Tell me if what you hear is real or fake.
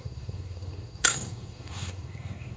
fake